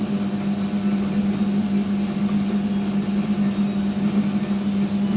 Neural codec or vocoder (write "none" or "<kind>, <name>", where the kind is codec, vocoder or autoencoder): none